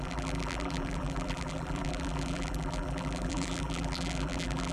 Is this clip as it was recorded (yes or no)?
no